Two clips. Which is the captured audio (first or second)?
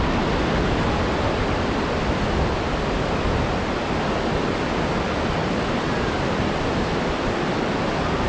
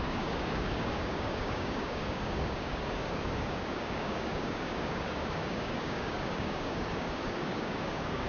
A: first